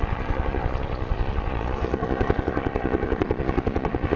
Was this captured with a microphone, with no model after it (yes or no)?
no